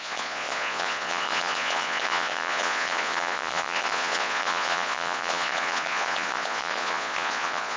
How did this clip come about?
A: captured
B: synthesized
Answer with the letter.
B